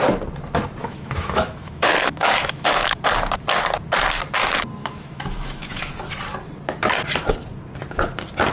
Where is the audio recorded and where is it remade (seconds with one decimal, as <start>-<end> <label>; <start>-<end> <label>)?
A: 0.0-0.8 recorded; 0.8-3.0 remade; 3.0-4.8 recorded; 4.8-5.9 remade; 5.9-8.5 recorded